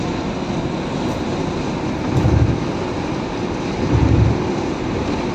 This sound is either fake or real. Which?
real